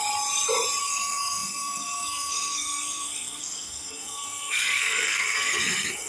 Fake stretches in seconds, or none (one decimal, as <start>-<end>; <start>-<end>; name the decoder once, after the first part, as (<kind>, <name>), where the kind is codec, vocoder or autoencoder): 0.8-6.1 (codec, SNAC)